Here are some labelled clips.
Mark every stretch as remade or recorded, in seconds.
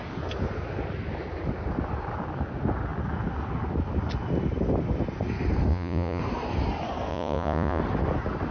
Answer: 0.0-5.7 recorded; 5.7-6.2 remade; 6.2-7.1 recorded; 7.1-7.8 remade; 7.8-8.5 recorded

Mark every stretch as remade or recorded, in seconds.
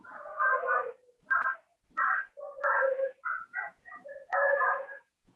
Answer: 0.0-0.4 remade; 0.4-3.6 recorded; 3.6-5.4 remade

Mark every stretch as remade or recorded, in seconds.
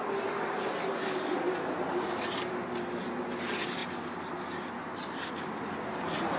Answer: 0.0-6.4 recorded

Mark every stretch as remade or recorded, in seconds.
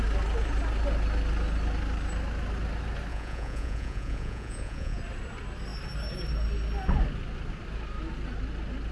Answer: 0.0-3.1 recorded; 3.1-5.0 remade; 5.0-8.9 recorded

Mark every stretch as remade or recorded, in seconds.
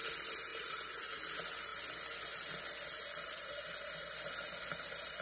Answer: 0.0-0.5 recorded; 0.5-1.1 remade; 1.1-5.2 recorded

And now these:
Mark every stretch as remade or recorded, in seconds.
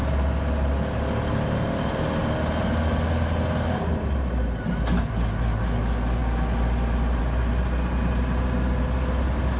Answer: 0.0-9.6 recorded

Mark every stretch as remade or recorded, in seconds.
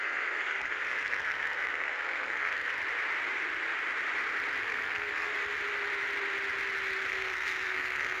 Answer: 0.0-2.8 remade; 2.8-4.6 recorded; 4.6-5.3 remade; 5.3-7.1 recorded; 7.1-8.2 remade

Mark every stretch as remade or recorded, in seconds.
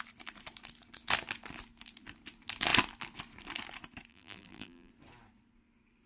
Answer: 0.0-4.1 recorded; 4.1-4.9 remade; 4.9-6.1 recorded